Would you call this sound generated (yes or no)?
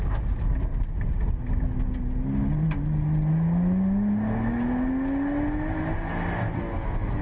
no